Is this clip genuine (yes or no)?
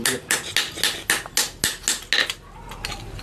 yes